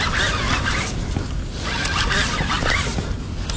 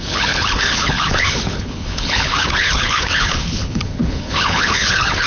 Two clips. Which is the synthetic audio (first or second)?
second